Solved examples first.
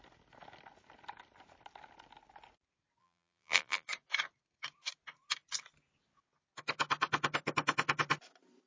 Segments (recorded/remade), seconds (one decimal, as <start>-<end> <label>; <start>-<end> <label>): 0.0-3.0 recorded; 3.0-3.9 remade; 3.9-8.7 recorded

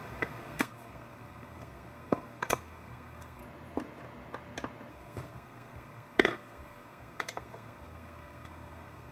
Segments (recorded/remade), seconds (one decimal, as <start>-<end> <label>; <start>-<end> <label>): 0.0-3.4 remade; 3.4-4.9 recorded; 4.9-9.1 remade

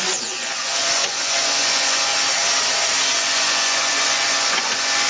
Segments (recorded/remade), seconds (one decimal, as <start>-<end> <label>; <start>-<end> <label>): 0.0-2.1 remade; 2.1-3.1 recorded; 3.1-5.1 remade

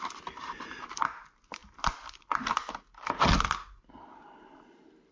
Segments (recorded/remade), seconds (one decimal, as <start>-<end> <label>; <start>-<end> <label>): 0.0-5.1 recorded